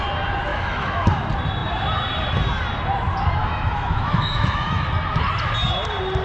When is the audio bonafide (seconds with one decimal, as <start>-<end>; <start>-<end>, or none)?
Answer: 0.0-0.5; 1.1-3.4; 4.9-6.2